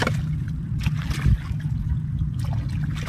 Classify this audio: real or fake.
real